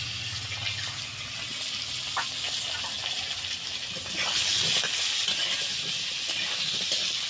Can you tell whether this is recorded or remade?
recorded